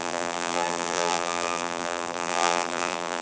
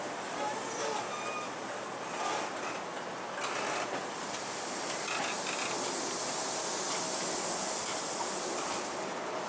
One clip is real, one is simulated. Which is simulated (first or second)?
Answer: first